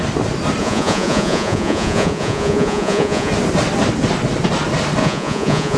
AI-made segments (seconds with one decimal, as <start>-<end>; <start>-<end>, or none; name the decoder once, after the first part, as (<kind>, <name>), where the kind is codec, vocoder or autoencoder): 0.6-3.3 (vocoder, Vocos); 5.0-5.8